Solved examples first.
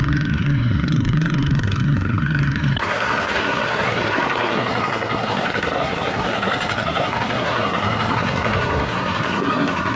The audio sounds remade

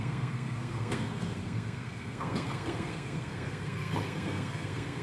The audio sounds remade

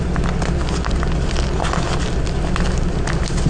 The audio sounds recorded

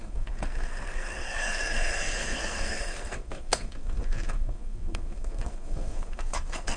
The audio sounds remade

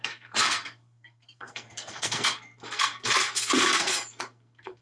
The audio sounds remade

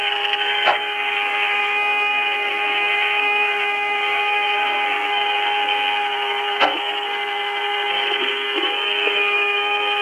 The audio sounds remade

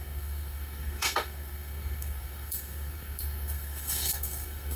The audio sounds remade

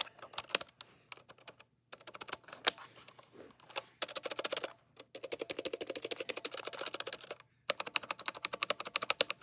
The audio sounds recorded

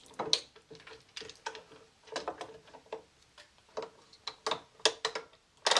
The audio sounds recorded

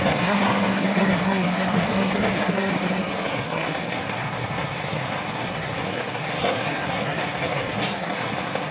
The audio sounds remade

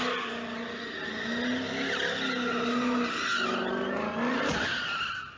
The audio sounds recorded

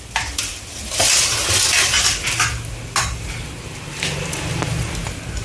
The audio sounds recorded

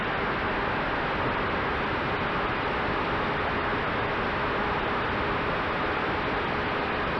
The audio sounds recorded